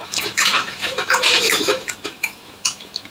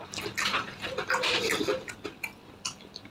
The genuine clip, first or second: second